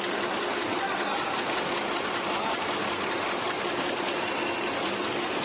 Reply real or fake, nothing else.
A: real